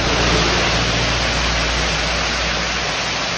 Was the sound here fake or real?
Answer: real